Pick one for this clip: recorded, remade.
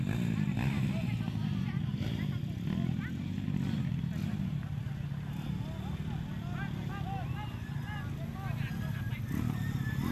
recorded